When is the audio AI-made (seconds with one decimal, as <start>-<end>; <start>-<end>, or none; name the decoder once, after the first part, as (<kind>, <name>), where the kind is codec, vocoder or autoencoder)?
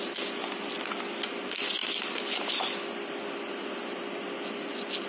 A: none